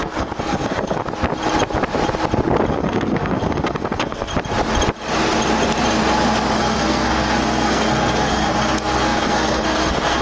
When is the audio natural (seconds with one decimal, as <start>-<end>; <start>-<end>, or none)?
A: 1.0-2.7; 4.3-6.6